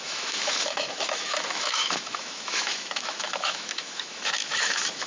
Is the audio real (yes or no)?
no